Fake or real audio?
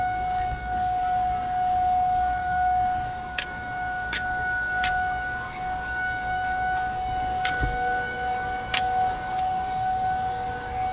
fake